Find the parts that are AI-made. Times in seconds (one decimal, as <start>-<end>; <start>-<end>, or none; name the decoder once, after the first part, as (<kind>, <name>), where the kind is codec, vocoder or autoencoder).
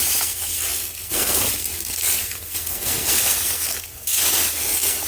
0.0-5.1 (codec, SNAC)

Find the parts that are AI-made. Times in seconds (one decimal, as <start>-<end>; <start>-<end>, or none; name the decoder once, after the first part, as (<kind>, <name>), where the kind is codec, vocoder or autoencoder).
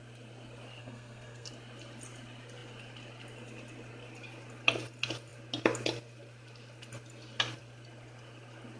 0.8-1.5 (codec, SNAC)